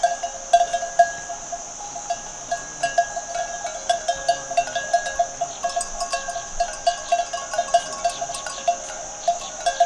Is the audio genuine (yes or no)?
yes